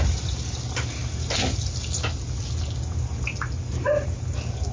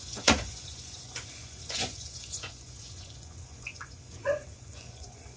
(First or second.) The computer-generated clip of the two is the second